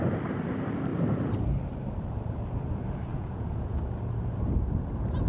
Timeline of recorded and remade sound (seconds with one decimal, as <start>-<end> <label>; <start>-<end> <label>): 0.0-3.1 recorded; 3.1-3.8 remade; 3.8-5.3 recorded